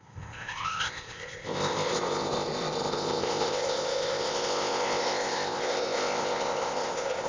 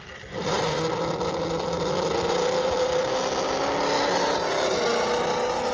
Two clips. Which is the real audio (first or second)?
second